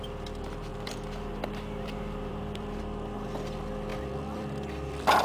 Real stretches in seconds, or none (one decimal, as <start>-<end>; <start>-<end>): 0.0-0.7; 2.8-3.9